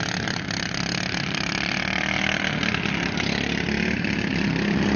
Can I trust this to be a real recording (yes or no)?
yes